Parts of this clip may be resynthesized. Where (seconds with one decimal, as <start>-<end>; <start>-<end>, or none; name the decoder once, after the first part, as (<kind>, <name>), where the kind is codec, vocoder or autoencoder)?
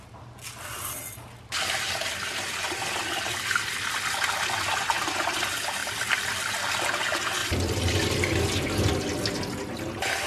5.8-6.5 (vocoder, BigVGAN v2); 7.4-7.9